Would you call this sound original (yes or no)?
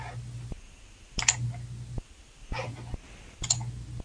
yes